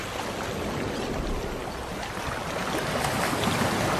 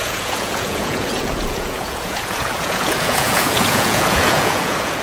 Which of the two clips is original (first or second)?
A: first